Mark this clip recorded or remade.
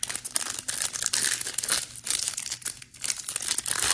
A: recorded